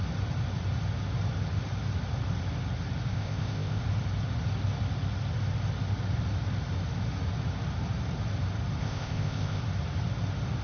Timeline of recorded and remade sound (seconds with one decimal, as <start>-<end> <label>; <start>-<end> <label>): 0.0-3.1 recorded; 3.1-3.8 remade; 3.8-8.8 recorded; 8.8-9.6 remade; 9.6-10.6 recorded